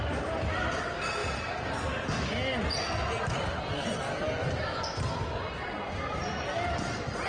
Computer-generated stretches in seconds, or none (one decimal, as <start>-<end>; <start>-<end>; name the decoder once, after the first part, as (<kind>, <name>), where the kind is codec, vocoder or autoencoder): none